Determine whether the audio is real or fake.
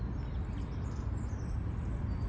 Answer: real